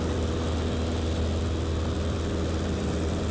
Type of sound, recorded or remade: recorded